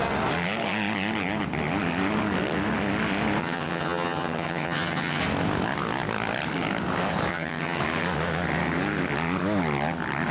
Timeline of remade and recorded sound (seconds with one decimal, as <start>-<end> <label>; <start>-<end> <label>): 0.0-3.4 recorded; 3.4-5.2 remade; 5.2-7.3 recorded; 7.3-7.8 remade; 7.8-10.3 recorded